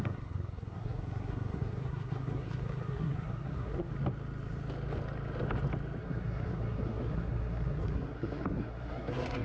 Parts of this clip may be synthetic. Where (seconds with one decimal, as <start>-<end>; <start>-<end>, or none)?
0.0-3.9; 6.0-9.4